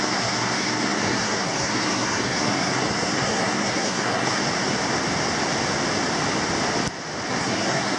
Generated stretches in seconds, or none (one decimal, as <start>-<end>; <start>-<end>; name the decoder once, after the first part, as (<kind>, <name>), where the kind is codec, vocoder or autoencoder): 0.0-4.4 (codec, SNAC); 7.3-8.0

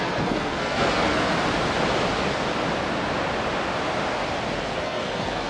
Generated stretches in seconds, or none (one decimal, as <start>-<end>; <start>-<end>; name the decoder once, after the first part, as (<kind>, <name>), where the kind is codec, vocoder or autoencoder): 0.0-1.3 (codec, SNAC); 4.6-5.5

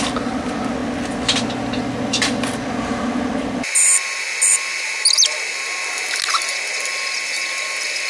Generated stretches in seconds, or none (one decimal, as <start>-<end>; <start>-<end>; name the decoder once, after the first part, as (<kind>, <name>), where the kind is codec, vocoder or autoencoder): none

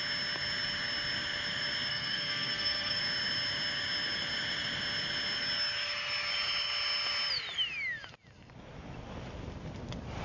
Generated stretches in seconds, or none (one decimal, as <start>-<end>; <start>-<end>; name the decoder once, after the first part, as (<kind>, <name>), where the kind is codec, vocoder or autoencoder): 1.9-3.0 (codec, SNAC)

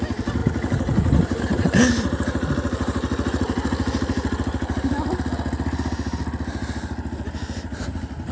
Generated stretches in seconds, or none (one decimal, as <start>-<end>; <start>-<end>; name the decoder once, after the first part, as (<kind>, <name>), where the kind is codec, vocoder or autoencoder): none